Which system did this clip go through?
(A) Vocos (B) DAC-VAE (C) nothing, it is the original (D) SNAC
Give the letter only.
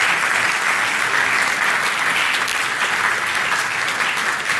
C